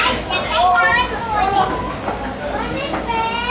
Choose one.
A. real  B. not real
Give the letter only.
A